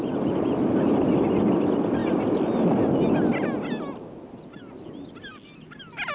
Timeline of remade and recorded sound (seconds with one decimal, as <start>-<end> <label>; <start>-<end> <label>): 0.0-6.1 recorded